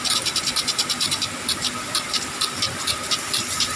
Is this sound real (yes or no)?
yes